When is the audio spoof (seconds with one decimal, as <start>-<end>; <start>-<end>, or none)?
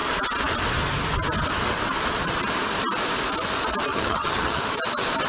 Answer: 3.9-4.6